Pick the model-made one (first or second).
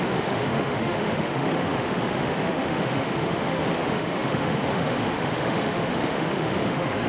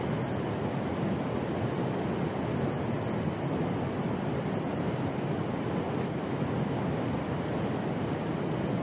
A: first